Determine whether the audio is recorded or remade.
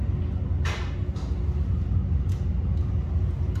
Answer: recorded